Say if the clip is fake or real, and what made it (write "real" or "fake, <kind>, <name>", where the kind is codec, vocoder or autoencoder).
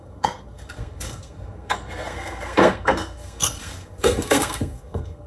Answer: fake, codec, SNAC